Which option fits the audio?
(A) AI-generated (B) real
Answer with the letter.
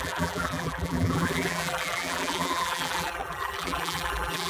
A